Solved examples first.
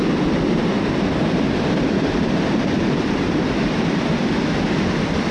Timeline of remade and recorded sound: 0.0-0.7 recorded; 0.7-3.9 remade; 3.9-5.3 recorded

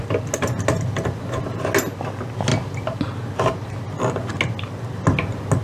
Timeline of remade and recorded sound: 0.0-5.6 recorded

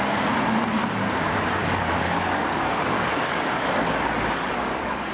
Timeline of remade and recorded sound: 0.0-1.6 recorded; 1.6-5.1 remade

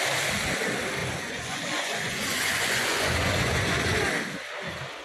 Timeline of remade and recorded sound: 0.0-1.0 recorded; 1.0-4.0 remade; 4.0-5.0 recorded

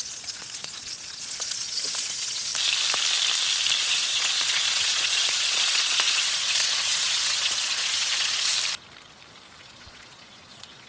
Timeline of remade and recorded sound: 0.0-2.5 remade; 2.5-3.8 recorded; 3.8-8.5 remade; 8.5-9.6 recorded; 9.6-10.9 remade

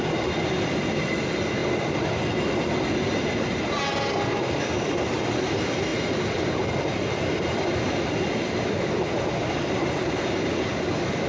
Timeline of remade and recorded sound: 0.0-11.3 recorded

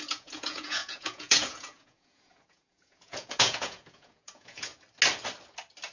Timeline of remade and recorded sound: 0.0-4.7 remade; 4.7-5.9 recorded